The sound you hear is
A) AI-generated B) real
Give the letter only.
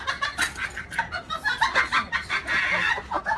B